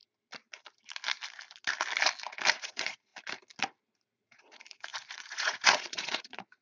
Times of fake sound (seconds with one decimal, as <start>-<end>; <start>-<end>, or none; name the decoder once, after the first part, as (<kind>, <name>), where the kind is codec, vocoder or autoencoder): 2.5-3.1 (vocoder, Vocos); 3.8-6.6